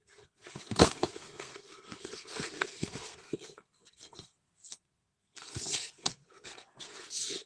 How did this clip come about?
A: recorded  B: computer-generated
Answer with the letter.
B